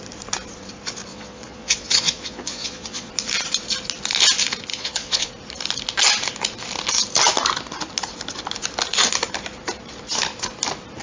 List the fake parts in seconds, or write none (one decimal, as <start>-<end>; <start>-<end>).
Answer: 1.1-3.1; 4.7-5.3